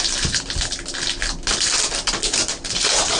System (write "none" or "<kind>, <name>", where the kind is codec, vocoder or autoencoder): none